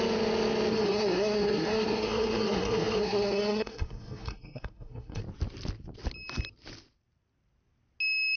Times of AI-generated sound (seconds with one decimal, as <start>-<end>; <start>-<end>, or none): 0.7-5.2